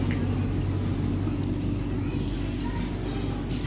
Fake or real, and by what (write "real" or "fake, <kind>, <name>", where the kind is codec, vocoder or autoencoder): real